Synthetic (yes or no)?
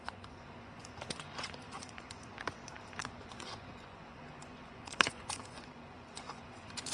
yes